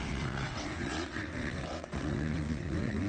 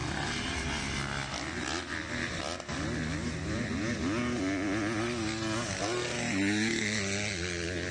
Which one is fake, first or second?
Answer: first